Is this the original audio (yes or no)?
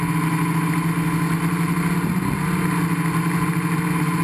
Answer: yes